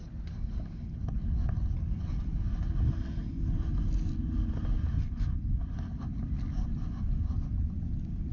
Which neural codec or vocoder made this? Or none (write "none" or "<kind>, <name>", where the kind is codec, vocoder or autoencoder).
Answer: none